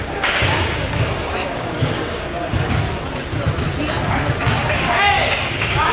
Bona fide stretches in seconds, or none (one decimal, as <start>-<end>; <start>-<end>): 2.3-4.7